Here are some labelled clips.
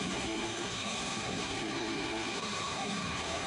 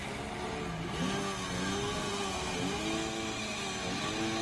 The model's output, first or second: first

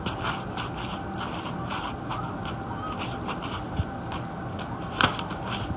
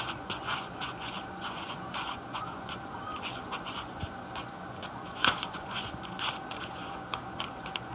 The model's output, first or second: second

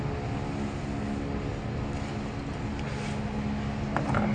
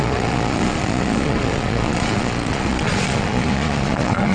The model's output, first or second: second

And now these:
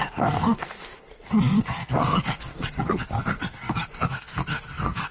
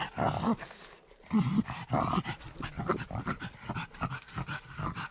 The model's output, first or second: first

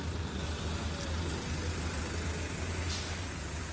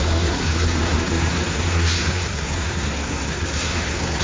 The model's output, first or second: second